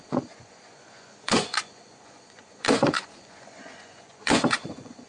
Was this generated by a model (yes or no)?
yes